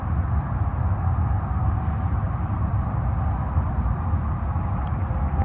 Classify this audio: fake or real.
real